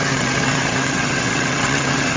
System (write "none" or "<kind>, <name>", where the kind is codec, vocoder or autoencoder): vocoder, WaveNeXt